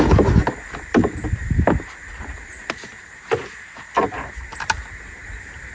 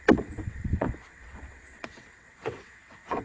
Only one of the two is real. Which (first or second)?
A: first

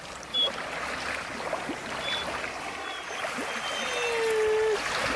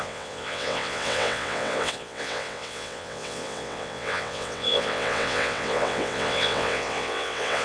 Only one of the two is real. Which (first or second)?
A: first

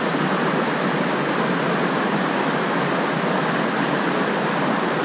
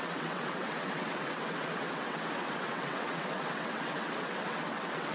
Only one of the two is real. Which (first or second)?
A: first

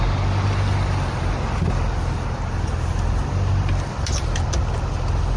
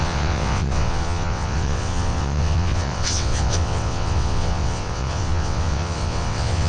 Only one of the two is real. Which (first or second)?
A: first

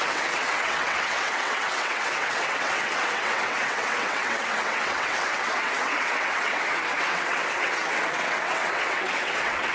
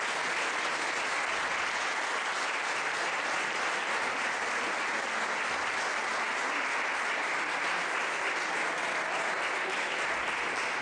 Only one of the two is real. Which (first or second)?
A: second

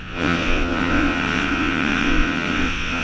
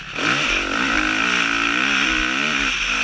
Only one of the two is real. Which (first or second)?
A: second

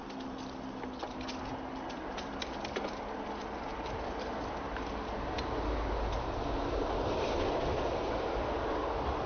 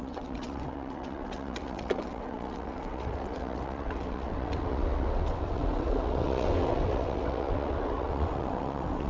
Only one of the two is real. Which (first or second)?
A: first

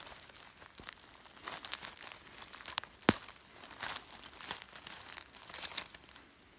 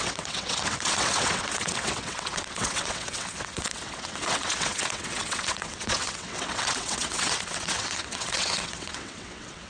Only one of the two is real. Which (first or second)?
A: first